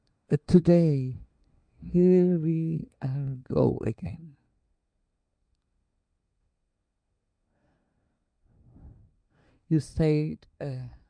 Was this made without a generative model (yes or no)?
no